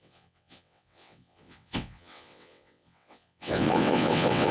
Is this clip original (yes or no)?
no